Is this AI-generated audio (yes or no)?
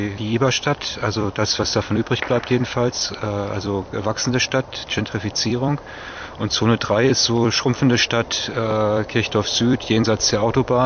yes